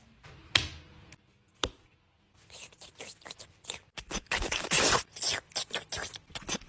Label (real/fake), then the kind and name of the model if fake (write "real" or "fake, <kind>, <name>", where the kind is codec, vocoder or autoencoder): real